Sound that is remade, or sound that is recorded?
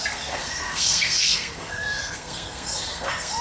remade